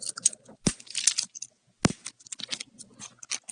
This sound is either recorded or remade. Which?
recorded